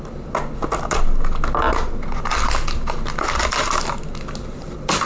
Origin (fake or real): real